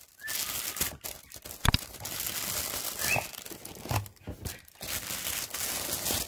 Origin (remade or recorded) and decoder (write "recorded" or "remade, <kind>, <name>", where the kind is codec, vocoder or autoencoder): recorded